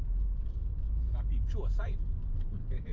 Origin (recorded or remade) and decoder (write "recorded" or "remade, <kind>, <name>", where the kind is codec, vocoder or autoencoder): remade, vocoder, BigVGAN v2